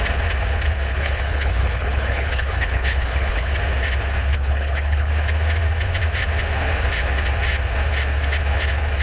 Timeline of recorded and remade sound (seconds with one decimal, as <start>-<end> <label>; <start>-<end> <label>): 0.0-0.9 recorded; 0.9-3.5 remade; 3.5-4.3 recorded; 4.3-5.1 remade; 5.1-9.0 recorded